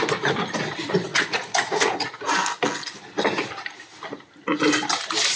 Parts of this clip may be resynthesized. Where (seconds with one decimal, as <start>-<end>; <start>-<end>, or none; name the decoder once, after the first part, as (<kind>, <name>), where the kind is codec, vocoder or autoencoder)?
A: 1.1-2.3 (vocoder, Vocos)